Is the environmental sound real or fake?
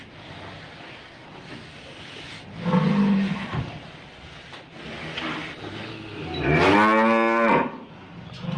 real